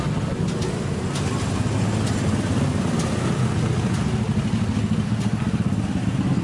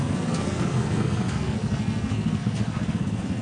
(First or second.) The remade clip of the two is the second